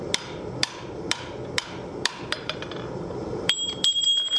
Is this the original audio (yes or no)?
no